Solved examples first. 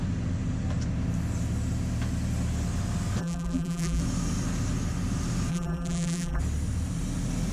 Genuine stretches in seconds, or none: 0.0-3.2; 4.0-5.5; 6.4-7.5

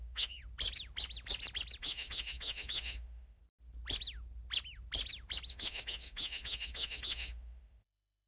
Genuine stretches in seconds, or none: 0.4-1.8; 3.4-5.5

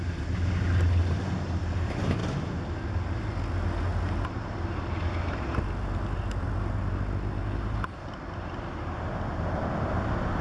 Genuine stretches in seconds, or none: 0.0-10.4

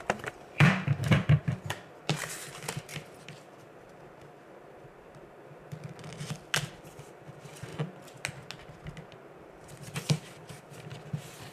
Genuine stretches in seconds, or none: 1.4-2.0; 2.9-6.8; 7.7-9.3

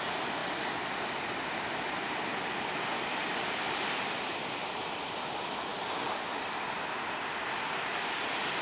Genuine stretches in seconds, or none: 0.0-8.6

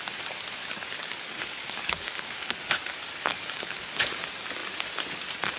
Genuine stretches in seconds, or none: 0.0-1.0; 2.9-3.3; 4.0-5.6

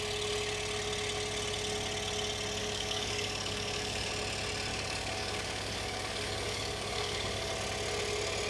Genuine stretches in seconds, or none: 0.0-2.6; 4.1-4.7; 7.5-8.5